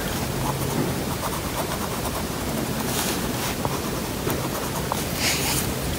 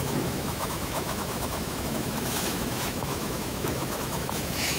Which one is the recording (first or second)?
first